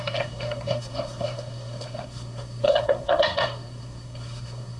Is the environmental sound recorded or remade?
remade